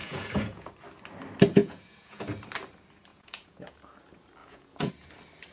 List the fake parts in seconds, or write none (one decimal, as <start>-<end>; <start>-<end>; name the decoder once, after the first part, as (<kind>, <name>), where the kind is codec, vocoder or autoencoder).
0.0-0.7 (vocoder, Vocos); 1.6-2.2; 3.1-3.8; 4.4-4.9